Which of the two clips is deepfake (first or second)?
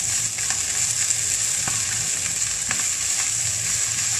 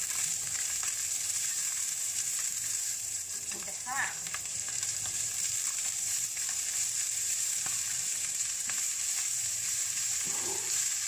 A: second